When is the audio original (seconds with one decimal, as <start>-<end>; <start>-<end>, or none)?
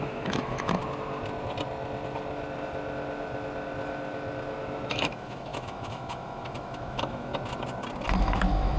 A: 0.8-4.9; 7.3-8.2